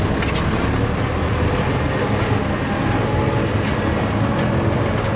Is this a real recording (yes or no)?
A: yes